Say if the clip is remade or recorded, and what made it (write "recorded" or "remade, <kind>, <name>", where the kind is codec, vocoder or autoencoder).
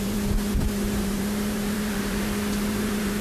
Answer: remade, vocoder, BigVGAN v2